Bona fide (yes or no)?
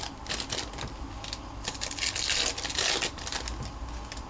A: yes